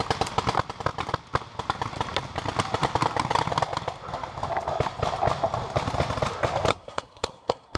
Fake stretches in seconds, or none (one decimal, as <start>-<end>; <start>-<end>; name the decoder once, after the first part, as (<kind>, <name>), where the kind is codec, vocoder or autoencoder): 6.7-7.8 (codec, SNAC)